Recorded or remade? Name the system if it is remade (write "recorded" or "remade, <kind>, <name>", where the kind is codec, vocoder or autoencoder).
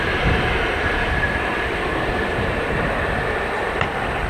remade, vocoder, BigVGAN v2